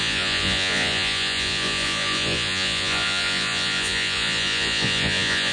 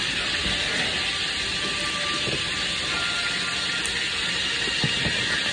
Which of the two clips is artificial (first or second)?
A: first